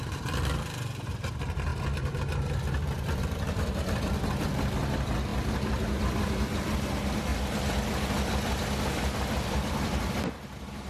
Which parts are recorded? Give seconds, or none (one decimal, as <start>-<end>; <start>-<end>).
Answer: 1.7-3.2; 5.3-6.0; 7.3-9.3